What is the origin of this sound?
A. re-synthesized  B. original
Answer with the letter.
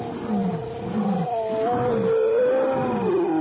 B